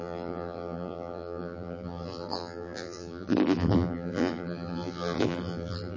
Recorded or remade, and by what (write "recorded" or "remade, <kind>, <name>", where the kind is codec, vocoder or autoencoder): remade, vocoder, BigVGAN v2